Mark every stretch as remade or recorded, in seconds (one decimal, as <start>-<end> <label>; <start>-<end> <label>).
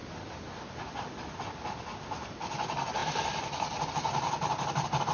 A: 0.0-5.1 recorded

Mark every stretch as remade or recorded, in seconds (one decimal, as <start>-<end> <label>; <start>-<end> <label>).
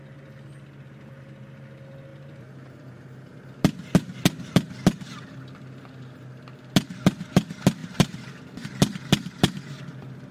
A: 0.0-2.1 recorded; 2.1-3.4 remade; 3.4-7.8 recorded; 7.8-8.3 remade; 8.3-10.3 recorded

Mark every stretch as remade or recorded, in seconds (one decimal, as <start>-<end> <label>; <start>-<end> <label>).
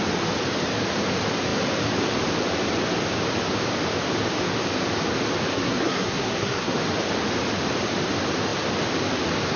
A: 0.0-5.5 recorded; 5.5-6.8 remade; 6.8-9.6 recorded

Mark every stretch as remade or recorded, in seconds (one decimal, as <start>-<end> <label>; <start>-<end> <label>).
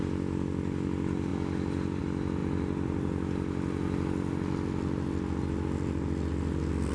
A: 0.0-6.9 recorded